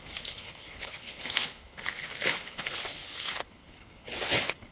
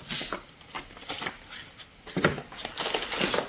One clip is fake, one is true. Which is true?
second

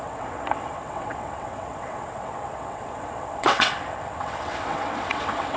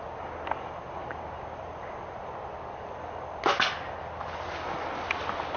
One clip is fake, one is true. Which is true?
second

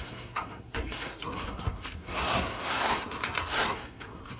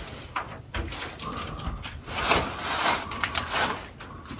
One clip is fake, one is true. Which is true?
second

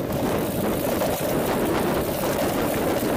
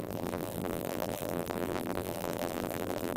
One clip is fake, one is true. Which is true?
first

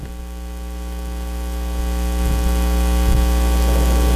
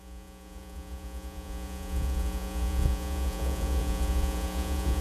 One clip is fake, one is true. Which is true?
first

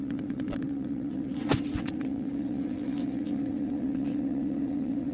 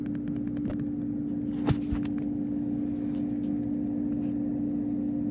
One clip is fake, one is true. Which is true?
second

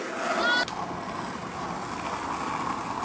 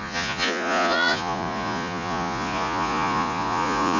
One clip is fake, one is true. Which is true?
first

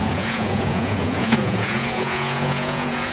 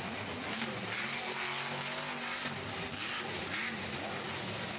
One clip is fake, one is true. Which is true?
second